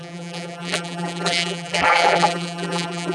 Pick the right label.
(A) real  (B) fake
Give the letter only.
B